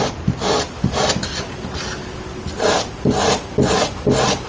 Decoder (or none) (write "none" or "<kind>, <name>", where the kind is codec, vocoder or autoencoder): none